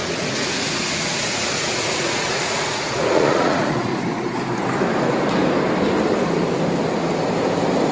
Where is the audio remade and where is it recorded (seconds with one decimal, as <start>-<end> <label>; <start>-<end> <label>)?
0.0-3.9 remade; 3.9-7.9 recorded